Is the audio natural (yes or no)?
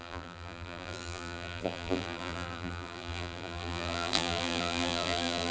no